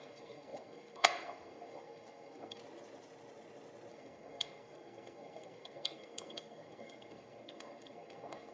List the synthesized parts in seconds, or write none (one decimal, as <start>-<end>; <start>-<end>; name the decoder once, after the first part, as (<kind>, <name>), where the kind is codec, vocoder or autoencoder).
0.0-2.6 (codec, SNAC); 3.9-8.5